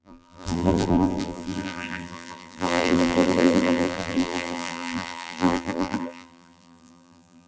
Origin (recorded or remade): remade